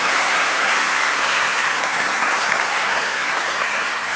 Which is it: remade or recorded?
remade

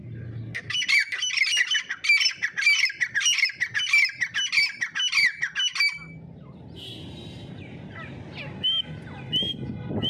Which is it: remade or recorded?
recorded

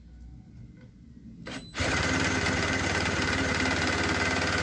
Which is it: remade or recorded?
recorded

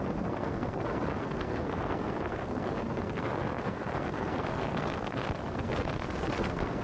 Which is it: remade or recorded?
remade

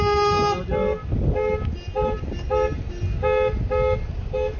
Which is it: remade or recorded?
recorded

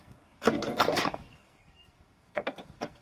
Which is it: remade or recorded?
remade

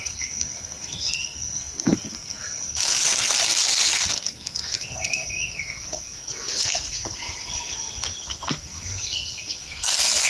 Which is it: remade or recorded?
remade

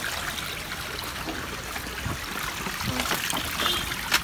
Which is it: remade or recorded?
recorded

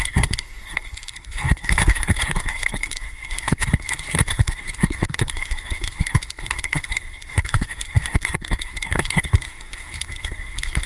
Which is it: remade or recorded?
remade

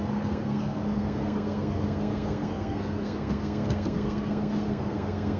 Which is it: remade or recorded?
remade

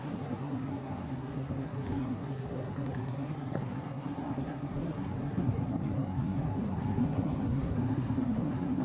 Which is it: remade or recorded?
remade